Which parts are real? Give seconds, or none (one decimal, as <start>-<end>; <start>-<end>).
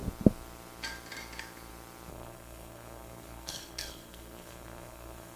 0.0-2.1